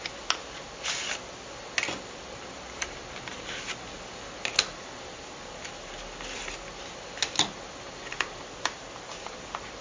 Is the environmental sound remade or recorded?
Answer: recorded